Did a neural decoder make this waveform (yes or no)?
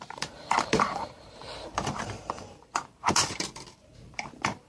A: yes